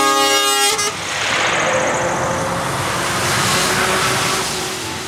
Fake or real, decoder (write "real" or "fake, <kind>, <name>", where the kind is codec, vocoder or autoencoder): real